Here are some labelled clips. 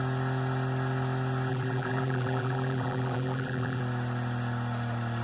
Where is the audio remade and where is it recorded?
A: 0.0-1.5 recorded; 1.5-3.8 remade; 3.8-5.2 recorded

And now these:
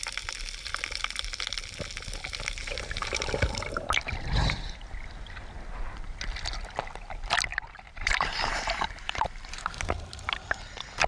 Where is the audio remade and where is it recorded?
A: 0.0-2.6 recorded; 2.6-4.1 remade; 4.1-7.5 recorded; 7.5-9.8 remade; 9.8-11.1 recorded